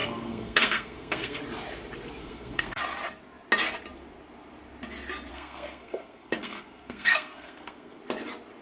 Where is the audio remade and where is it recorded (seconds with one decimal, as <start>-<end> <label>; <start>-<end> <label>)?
0.0-1.4 remade; 1.4-2.2 recorded; 2.2-2.8 remade; 2.8-5.3 recorded; 5.3-8.0 remade; 8.0-8.6 recorded